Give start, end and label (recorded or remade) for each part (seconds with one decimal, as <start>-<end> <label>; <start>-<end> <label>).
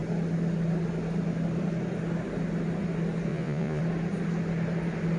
0.0-3.3 recorded; 3.3-3.8 remade; 3.8-5.2 recorded